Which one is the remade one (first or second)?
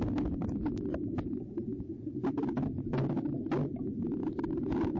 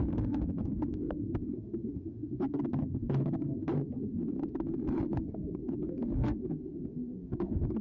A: second